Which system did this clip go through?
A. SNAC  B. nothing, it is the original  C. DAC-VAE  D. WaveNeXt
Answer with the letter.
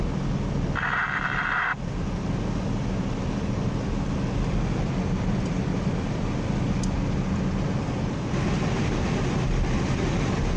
B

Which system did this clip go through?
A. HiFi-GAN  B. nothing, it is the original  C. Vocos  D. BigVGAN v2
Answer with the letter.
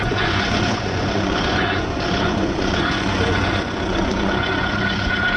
C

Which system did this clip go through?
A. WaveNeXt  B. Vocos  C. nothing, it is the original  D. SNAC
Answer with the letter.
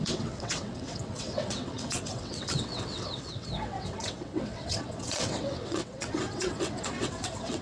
A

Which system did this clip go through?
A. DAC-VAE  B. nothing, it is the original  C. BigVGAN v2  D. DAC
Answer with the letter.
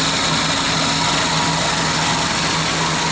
B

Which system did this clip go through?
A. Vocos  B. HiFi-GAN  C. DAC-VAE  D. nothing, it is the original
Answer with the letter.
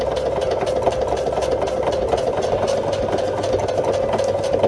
D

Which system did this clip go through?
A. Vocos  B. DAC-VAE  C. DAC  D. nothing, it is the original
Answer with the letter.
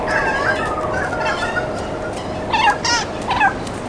D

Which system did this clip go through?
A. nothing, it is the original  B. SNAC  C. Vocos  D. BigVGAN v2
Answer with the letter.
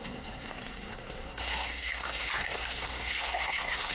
B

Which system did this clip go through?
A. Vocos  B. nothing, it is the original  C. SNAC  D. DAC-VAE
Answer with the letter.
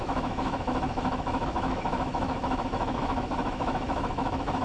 D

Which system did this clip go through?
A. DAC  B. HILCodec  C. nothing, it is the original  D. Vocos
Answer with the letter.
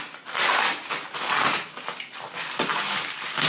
C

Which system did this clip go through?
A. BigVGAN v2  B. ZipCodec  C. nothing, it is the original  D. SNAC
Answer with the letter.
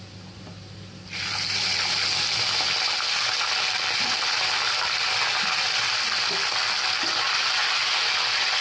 C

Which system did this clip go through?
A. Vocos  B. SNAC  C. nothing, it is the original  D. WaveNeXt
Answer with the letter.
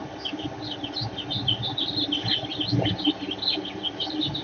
C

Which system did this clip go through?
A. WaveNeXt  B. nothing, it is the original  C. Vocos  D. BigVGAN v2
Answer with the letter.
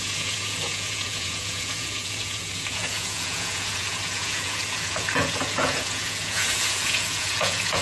C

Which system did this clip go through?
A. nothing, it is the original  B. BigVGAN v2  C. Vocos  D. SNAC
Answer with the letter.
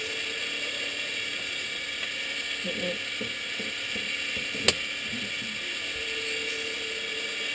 A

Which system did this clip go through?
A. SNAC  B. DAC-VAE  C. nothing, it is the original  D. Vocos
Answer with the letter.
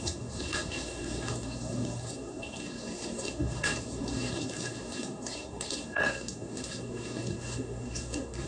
A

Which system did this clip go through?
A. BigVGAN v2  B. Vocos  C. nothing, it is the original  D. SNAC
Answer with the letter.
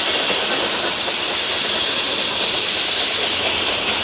A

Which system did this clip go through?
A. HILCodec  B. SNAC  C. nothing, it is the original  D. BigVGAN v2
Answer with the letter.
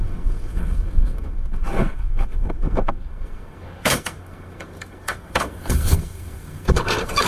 B